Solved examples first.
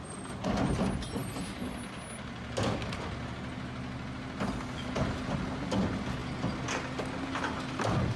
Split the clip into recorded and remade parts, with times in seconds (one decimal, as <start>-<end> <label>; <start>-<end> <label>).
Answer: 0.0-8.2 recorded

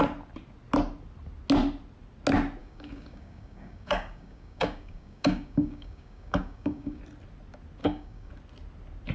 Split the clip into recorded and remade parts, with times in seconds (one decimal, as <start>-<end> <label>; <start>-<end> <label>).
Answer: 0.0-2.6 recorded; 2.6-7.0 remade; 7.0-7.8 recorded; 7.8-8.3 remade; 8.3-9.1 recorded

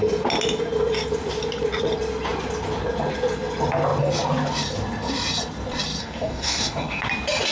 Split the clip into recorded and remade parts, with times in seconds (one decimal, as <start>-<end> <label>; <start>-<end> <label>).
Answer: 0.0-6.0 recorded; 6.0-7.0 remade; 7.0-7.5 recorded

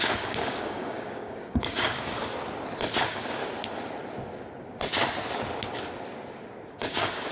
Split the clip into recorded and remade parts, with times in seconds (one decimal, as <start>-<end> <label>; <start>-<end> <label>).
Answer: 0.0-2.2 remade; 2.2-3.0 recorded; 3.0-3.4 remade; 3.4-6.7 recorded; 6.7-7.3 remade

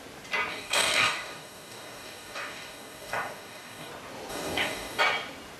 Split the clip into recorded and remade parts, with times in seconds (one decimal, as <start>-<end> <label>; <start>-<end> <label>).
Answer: 0.0-0.5 recorded; 0.5-3.9 remade; 3.9-4.3 recorded; 4.3-5.0 remade; 5.0-5.6 recorded

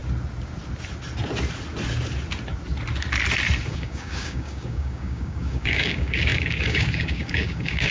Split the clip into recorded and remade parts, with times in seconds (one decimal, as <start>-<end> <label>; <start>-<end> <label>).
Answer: 0.0-3.7 recorded; 3.7-7.9 remade